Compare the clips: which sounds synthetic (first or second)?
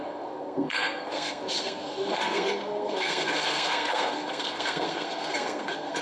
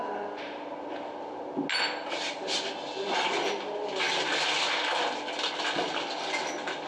first